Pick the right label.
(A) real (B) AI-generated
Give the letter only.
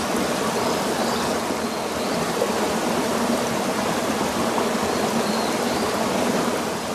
A